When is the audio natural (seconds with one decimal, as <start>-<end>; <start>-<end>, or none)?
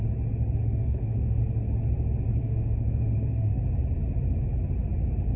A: 0.0-0.6; 1.4-2.4; 3.6-5.4